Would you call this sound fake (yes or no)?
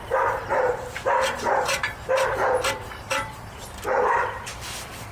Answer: yes